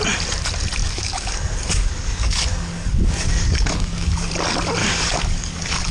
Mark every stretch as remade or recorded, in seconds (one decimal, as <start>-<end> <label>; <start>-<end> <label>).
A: 0.0-0.8 recorded; 0.8-4.3 remade; 4.3-4.8 recorded; 4.8-5.9 remade